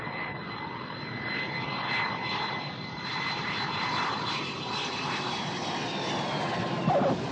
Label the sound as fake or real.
real